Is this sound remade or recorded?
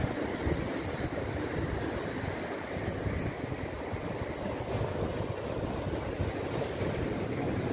recorded